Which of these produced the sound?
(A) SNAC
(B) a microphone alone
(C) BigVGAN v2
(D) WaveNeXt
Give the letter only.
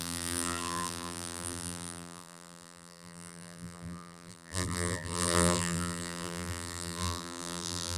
C